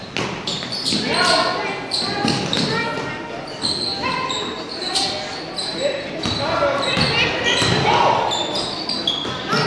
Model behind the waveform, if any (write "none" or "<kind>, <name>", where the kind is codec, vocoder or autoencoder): none